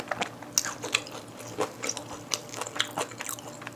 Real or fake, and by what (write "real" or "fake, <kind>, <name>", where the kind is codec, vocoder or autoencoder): real